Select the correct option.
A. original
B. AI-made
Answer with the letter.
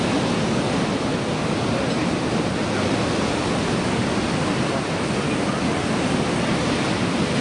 A